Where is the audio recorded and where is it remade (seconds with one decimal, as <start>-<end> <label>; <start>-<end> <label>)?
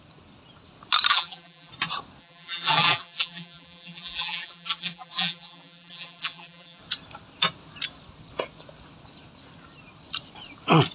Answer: 0.0-1.1 recorded; 1.1-1.7 remade; 1.7-2.2 recorded; 2.2-6.8 remade; 6.8-10.9 recorded